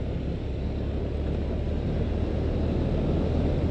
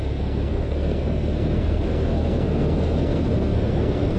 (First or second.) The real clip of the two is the first